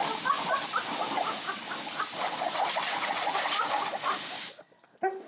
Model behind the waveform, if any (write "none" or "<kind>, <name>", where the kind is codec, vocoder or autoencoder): none